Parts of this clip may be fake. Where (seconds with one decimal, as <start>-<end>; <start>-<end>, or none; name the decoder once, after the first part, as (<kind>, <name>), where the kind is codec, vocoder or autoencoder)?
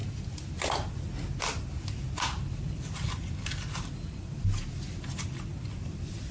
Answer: none